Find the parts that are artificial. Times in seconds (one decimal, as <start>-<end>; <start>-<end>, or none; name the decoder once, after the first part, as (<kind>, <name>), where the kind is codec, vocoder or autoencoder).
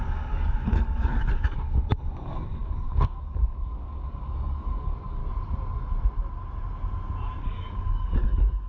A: 0.0-5.2 (codec, DAC); 7.4-8.7